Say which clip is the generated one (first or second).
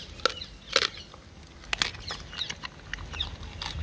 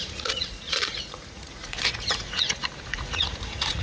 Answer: second